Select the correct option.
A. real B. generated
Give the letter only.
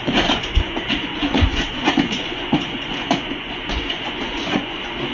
B